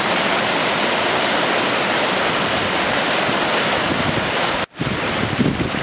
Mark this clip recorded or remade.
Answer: recorded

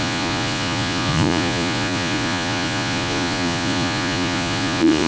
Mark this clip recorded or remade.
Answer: remade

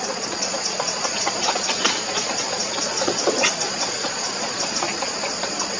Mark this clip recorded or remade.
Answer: remade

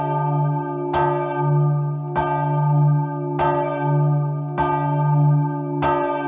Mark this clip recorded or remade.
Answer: recorded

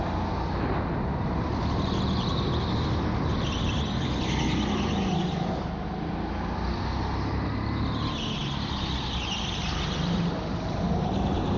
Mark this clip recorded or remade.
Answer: recorded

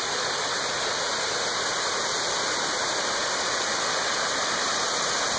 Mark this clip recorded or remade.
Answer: recorded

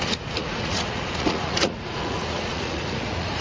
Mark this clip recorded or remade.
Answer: remade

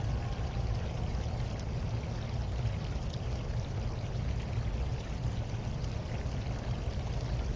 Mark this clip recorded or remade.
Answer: recorded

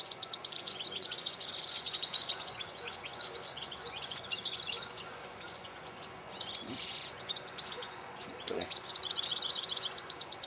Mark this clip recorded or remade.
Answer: remade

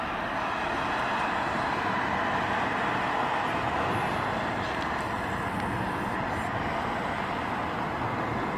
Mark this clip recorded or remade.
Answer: recorded